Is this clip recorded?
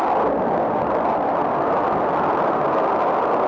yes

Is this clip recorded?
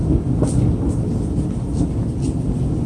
yes